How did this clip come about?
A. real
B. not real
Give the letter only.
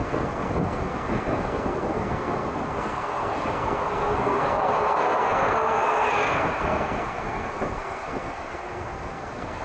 B